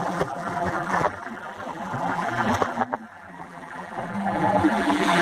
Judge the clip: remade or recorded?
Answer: remade